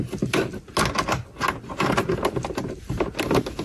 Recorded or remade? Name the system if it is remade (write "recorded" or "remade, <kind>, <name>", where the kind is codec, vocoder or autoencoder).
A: recorded